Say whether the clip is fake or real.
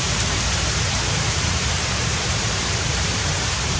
fake